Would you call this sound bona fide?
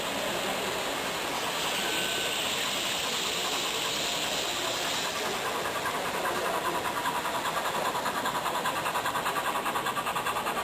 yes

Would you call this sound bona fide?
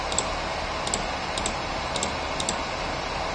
yes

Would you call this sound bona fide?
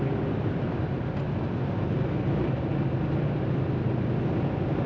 yes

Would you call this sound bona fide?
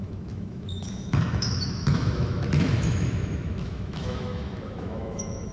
no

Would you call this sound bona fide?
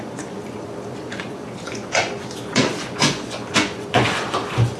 no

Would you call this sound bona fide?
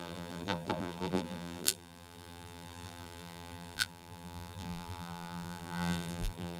no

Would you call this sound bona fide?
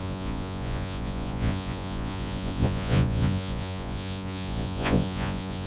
no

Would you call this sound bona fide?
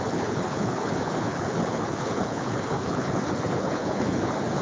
no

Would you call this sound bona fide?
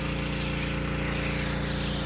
yes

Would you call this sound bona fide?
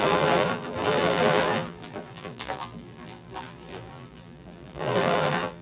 no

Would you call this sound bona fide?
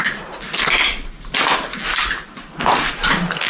yes